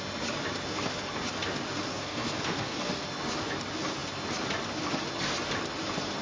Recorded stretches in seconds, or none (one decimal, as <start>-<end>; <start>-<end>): 0.0-1.9; 2.9-6.2